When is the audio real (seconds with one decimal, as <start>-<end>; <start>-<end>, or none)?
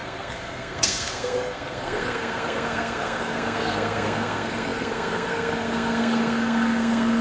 none